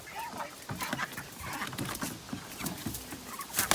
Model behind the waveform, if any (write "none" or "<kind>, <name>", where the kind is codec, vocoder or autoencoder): none